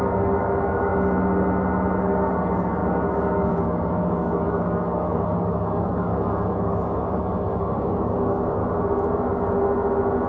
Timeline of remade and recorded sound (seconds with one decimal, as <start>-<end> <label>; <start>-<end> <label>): 0.0-0.9 remade; 0.9-2.0 recorded; 2.0-8.6 remade; 8.6-10.3 recorded